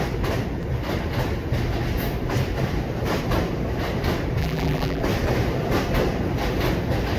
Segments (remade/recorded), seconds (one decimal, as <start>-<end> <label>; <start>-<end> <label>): 0.0-4.4 recorded; 4.4-5.0 remade; 5.0-7.2 recorded